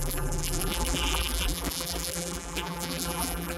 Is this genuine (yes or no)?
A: no